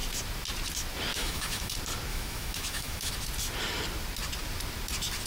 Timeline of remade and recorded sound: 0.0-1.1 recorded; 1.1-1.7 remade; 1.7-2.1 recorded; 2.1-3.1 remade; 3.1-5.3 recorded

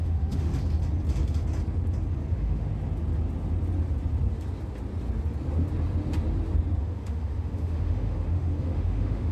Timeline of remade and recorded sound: 0.0-0.5 remade; 0.5-2.3 recorded; 2.3-2.7 remade; 2.7-6.8 recorded; 6.8-9.3 remade

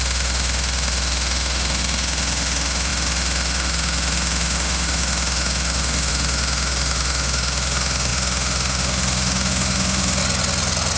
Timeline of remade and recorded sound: 0.0-10.2 remade; 10.2-11.0 recorded